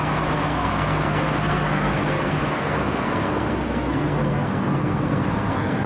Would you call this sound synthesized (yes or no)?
yes